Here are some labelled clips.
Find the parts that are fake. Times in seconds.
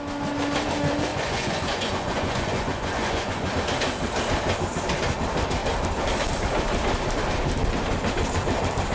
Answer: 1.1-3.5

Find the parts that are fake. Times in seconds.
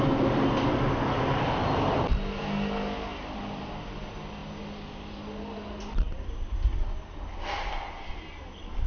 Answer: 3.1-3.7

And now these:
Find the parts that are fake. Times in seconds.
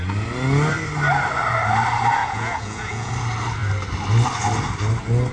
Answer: 2.2-3.1